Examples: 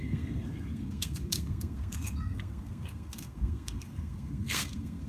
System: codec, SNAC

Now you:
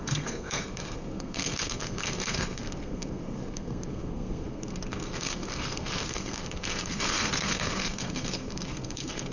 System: codec, SNAC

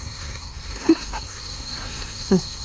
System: codec, SNAC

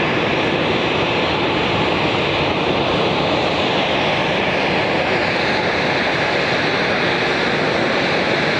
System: none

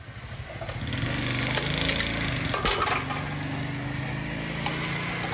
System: none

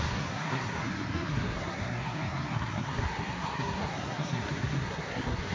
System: codec, SNAC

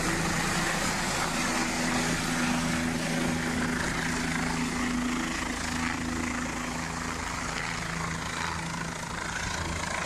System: none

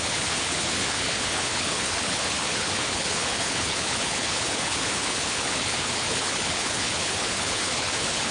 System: codec, HILCodec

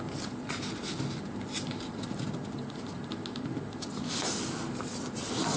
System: none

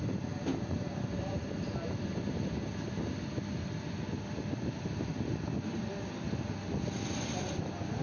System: none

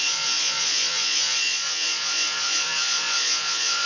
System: vocoder, Vocos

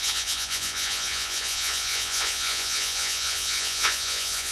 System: vocoder, Vocos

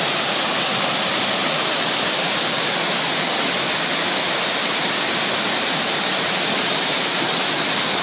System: none